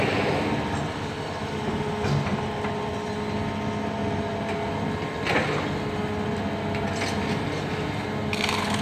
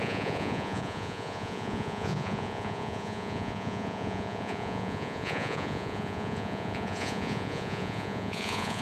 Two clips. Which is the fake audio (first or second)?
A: second